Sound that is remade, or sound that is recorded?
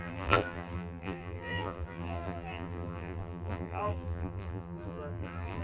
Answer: remade